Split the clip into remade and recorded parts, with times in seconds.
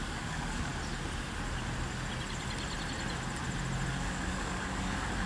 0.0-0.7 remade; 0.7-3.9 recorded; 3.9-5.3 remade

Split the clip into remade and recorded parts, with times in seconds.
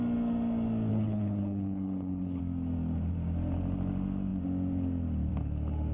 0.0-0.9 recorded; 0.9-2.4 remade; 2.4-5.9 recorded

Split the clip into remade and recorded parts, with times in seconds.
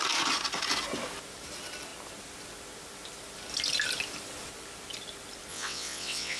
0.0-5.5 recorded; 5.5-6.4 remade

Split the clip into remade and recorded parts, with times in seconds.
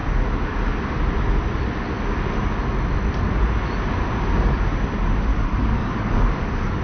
0.0-5.3 recorded; 5.3-6.8 remade